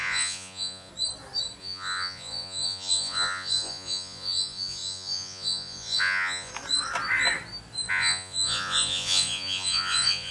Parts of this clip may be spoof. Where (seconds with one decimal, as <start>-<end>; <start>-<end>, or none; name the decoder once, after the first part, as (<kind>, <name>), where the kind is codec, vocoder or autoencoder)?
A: 0.0-0.9 (vocoder, Vocos); 1.6-6.5; 7.9-10.3